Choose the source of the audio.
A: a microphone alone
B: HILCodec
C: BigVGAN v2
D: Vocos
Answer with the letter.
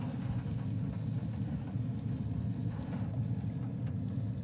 A